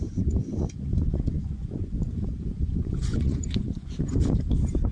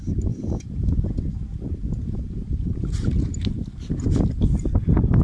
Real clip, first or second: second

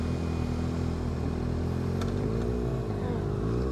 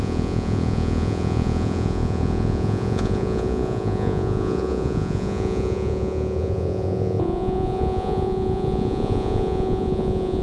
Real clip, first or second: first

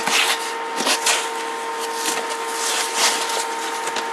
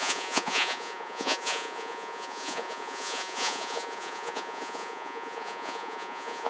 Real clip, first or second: first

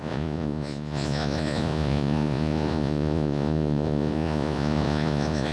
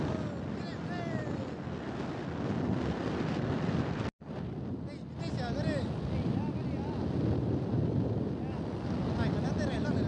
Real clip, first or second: second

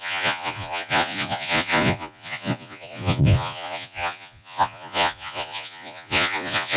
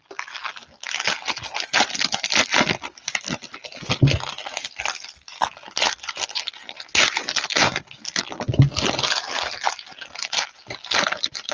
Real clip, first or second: second